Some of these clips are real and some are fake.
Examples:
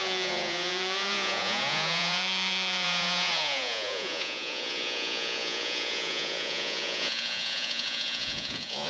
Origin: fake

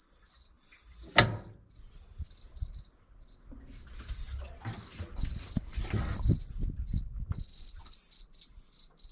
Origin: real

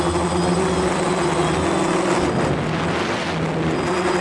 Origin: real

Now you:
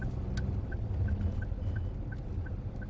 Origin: real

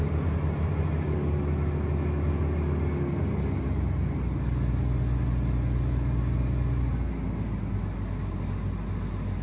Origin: real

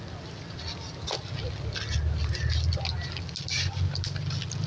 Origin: real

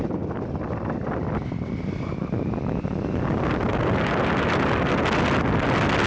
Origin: real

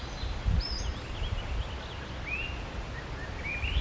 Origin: real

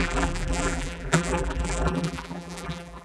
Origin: fake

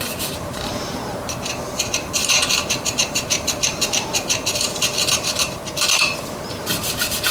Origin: fake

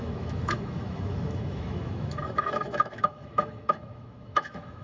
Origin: fake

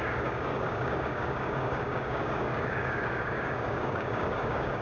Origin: fake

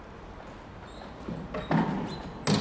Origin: real